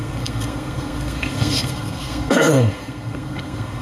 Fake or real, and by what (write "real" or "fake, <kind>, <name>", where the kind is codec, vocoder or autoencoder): fake, codec, SNAC